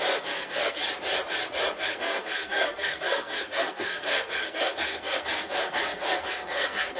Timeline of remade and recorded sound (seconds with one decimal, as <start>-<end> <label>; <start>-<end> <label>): 0.0-0.8 remade; 0.8-1.8 recorded; 1.8-7.0 remade